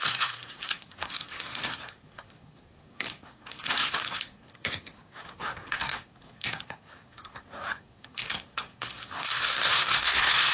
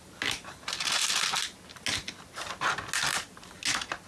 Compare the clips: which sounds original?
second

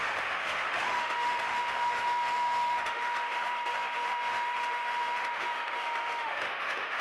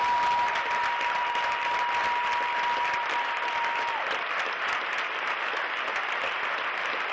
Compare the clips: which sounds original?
second